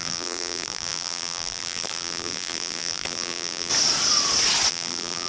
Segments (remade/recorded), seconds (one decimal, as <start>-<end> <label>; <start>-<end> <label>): 0.0-3.7 remade; 3.7-4.7 recorded; 4.7-5.3 remade